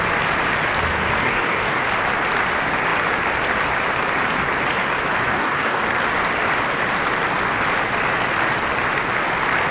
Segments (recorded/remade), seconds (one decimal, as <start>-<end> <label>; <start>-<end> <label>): 0.0-1.2 recorded; 1.2-1.8 remade; 1.8-5.3 recorded; 5.3-5.8 remade; 5.8-9.7 recorded